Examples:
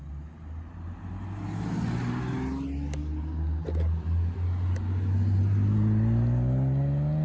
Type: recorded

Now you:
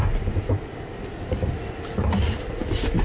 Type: recorded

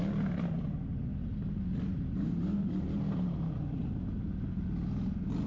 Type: recorded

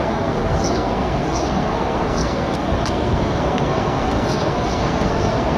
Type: remade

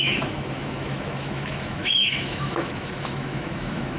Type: remade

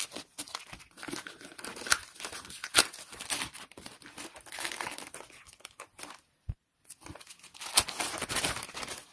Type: recorded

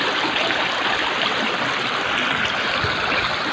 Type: remade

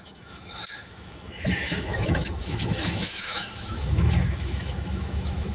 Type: remade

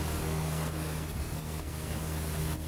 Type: remade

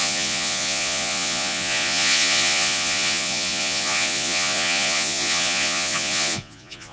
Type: remade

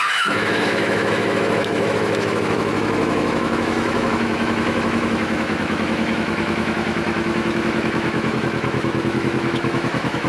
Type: remade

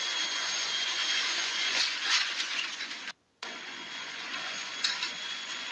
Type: remade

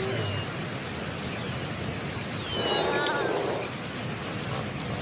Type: recorded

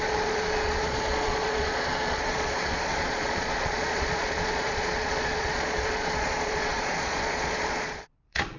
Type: remade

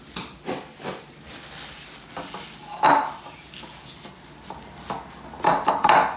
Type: recorded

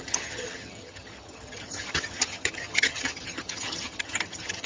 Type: remade